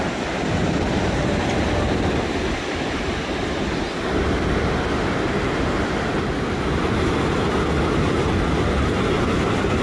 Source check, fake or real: real